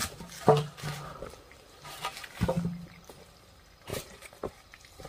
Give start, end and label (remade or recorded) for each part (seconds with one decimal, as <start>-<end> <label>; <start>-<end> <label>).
0.0-3.9 recorded; 3.9-4.5 remade; 4.5-5.1 recorded